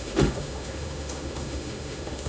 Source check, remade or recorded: remade